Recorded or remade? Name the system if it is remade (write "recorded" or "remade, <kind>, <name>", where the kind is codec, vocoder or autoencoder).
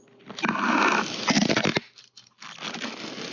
recorded